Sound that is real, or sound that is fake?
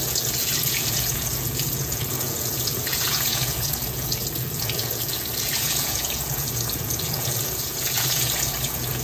fake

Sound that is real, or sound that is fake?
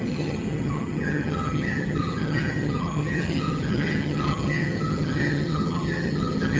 fake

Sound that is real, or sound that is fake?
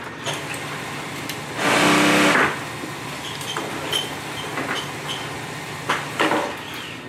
real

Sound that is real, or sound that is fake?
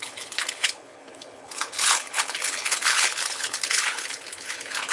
fake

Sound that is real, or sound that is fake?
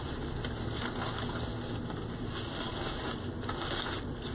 real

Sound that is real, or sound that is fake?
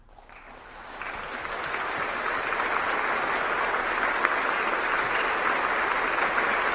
real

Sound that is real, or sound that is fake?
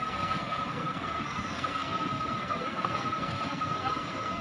fake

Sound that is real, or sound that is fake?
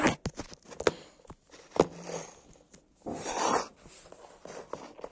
real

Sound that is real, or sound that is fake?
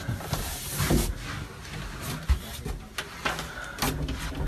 real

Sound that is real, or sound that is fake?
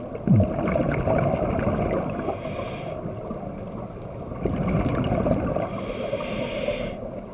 real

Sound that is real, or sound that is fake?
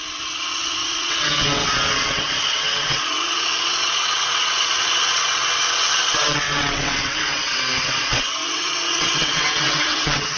fake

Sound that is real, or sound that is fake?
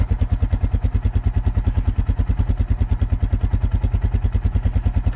real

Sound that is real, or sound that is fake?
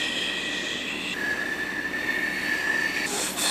real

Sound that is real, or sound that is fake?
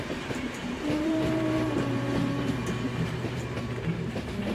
fake